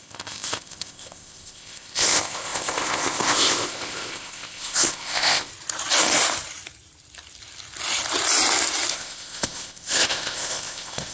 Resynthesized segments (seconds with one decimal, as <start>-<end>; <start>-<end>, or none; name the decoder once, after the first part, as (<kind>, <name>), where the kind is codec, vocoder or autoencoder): 0.0-5.5 (codec, ZipCodec); 8.9-11.1